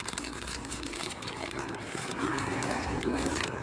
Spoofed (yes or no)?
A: yes